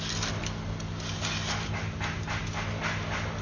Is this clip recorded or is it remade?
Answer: recorded